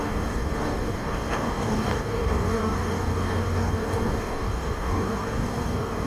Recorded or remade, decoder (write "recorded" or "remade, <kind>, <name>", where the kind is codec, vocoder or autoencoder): remade, codec, DAC